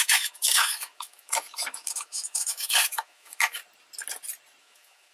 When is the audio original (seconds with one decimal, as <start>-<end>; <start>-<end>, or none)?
3.6-4.6